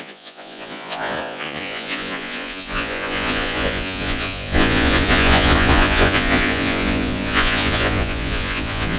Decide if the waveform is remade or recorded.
remade